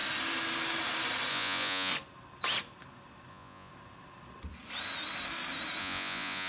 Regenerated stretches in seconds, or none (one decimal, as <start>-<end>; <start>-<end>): 1.3-1.9; 3.3-3.7; 5.8-6.5